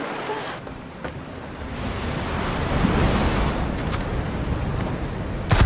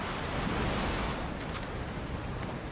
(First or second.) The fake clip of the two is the first